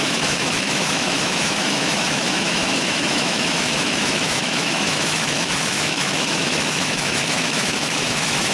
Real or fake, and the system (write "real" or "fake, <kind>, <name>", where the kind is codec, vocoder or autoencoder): fake, autoencoder, DAC-VAE